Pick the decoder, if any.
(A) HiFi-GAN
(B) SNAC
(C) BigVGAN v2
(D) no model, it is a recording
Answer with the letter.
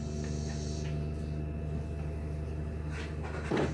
D